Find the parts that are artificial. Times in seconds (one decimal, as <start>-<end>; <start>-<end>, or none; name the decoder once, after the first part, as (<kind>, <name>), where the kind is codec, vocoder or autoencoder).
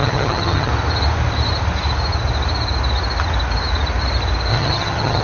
0.0-0.7 (vocoder, HiFi-GAN); 4.5-5.2